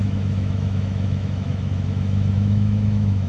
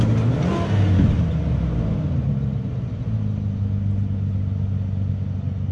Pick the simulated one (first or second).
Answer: first